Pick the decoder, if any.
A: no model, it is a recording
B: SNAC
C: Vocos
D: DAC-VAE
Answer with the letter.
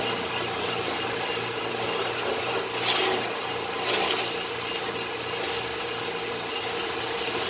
A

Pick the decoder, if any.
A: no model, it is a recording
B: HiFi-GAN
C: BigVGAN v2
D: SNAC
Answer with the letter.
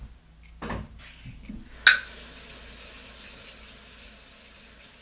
A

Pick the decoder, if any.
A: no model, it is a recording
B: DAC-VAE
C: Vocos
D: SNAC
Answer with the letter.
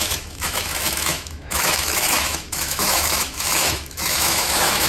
B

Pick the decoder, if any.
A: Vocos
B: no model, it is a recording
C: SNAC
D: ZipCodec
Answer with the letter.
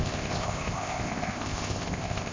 D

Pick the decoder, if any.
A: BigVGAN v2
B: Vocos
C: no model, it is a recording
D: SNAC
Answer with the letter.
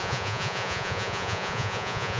B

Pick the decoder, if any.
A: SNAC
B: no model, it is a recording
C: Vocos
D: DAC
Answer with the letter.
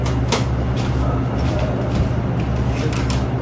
B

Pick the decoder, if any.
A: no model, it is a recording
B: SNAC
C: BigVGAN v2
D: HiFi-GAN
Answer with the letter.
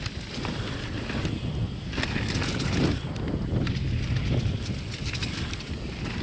A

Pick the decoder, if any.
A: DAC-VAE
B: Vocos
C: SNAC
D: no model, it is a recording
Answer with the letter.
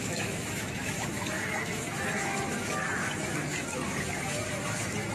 A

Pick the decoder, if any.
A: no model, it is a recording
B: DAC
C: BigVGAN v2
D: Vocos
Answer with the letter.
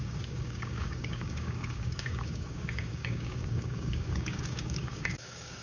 B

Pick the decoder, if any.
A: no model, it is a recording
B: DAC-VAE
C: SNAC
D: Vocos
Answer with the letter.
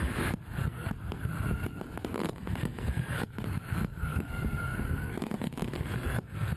C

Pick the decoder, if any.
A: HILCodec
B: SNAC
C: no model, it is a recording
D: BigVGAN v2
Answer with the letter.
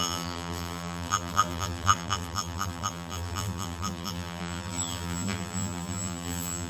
D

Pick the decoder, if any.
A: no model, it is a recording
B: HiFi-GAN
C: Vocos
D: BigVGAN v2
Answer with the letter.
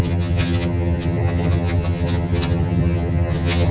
B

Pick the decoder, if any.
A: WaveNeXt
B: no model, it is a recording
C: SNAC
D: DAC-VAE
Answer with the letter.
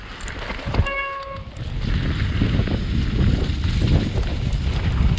B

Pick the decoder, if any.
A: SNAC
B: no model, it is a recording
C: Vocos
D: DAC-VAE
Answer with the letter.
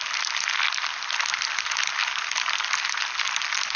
B